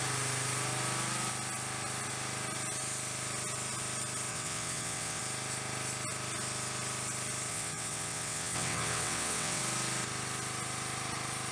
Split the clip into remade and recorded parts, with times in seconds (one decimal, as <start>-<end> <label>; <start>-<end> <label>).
0.0-4.3 recorded; 4.3-5.2 remade; 5.2-7.5 recorded; 7.5-9.6 remade; 9.6-11.5 recorded

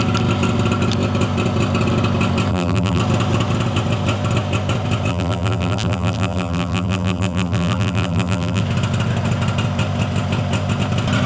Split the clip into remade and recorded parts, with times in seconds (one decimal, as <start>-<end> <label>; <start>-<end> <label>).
0.0-2.5 recorded; 2.5-3.0 remade; 3.0-5.1 recorded; 5.1-8.6 remade; 8.6-11.3 recorded

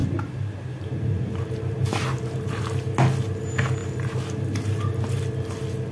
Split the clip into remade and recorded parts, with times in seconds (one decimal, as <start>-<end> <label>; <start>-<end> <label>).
0.0-2.6 remade; 2.6-3.8 recorded; 3.8-5.2 remade; 5.2-5.9 recorded

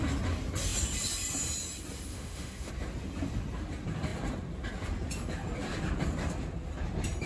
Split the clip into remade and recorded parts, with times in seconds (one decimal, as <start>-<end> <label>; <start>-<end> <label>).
0.0-2.1 recorded; 2.1-2.7 remade; 2.7-7.3 recorded